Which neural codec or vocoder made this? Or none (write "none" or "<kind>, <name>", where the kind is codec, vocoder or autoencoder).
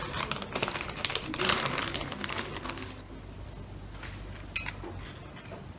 none